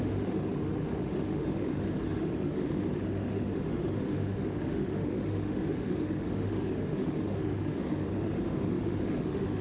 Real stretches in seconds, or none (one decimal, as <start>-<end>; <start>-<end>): none